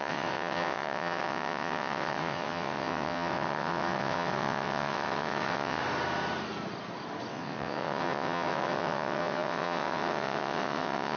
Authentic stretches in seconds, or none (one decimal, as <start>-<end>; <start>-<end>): 5.8-7.3